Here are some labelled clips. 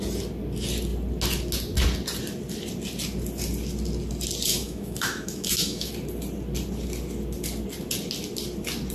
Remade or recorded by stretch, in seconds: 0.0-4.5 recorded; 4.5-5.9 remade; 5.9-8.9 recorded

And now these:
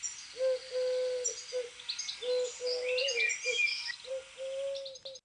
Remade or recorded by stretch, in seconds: 0.0-5.2 recorded

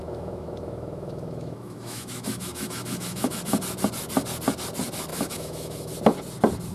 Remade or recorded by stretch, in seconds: 0.0-3.4 remade; 3.4-5.1 recorded; 5.1-5.9 remade; 5.9-6.7 recorded

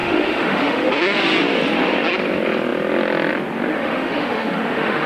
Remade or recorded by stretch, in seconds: 0.0-0.9 remade; 0.9-3.7 recorded; 3.7-5.1 remade